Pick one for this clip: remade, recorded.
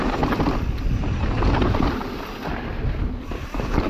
recorded